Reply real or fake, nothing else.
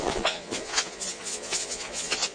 fake